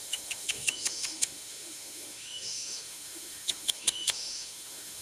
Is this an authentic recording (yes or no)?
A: no